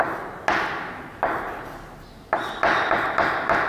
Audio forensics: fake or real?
real